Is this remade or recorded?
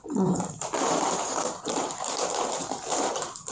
remade